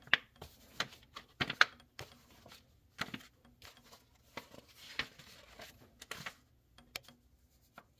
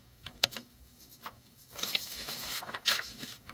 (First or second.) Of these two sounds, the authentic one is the first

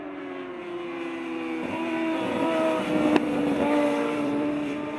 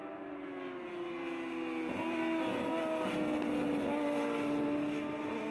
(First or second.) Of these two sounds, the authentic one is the second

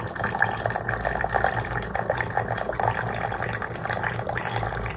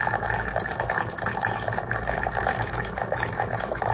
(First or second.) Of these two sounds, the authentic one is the first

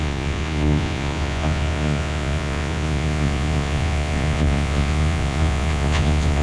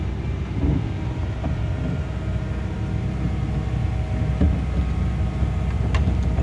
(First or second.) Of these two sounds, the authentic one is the second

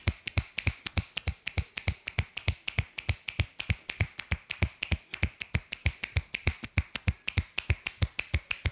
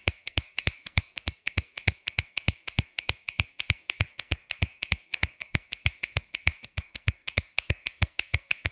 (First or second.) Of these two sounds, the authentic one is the first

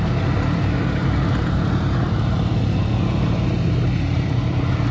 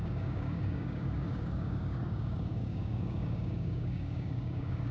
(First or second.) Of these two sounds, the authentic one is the first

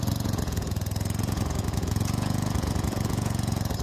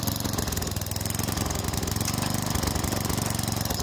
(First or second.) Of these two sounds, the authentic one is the second